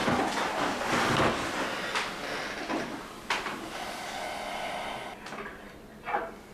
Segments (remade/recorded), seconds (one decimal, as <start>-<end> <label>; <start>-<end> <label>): 0.0-6.5 recorded